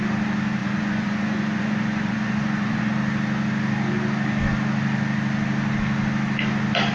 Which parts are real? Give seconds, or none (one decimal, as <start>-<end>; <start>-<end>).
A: 0.0-0.6; 2.9-6.9